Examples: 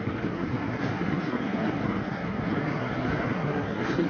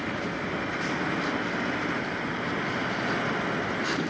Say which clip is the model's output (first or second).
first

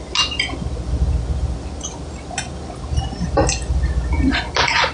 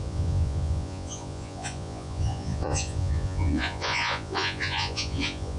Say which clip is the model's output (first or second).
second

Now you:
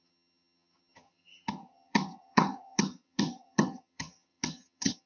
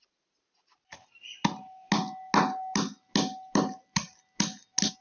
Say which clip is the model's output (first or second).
first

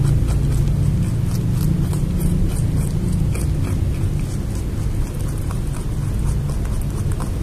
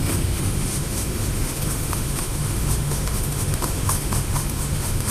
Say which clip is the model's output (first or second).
second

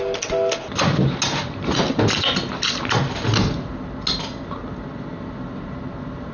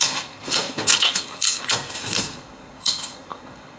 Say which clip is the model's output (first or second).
second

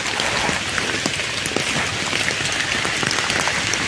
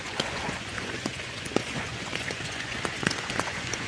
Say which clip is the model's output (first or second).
second